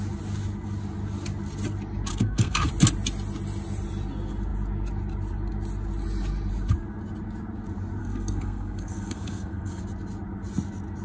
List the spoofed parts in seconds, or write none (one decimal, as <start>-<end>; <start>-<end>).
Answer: 2.1-2.7; 8.0-9.8